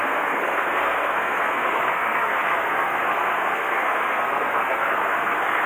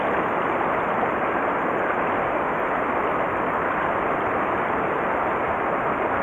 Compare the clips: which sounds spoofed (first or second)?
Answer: first